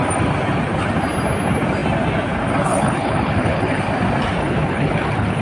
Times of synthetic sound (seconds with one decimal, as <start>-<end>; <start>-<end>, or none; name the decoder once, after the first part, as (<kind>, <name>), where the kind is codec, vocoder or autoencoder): 2.7-3.8 (codec, HILCodec); 4.4-5.4